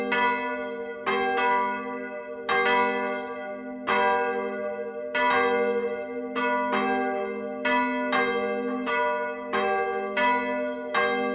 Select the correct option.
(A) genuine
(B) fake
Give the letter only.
A